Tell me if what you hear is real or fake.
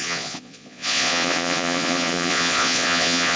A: fake